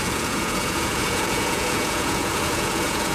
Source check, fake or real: fake